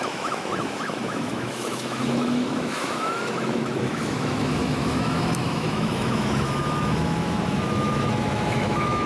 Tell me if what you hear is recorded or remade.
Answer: remade